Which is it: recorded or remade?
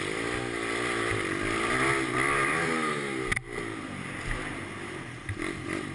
recorded